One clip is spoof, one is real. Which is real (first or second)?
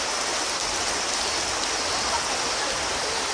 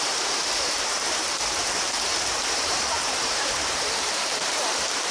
first